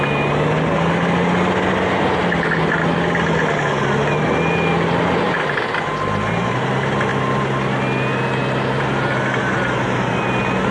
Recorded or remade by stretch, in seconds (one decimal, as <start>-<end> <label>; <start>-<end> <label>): 0.0-10.7 recorded